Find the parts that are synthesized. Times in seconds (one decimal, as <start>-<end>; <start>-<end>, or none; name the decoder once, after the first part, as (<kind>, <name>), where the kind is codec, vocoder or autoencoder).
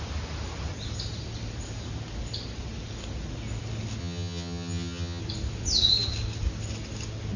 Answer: 4.0-5.2 (vocoder, HiFi-GAN)